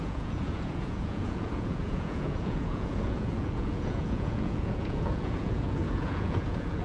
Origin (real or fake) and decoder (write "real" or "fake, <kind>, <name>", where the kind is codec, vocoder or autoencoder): fake, vocoder, Vocos